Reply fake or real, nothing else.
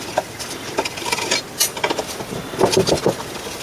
real